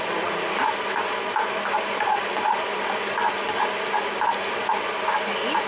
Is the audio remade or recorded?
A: recorded